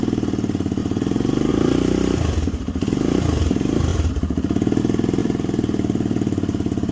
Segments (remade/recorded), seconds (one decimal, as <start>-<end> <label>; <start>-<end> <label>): 0.0-3.9 recorded; 3.9-4.8 remade; 4.8-5.2 recorded; 5.2-6.9 remade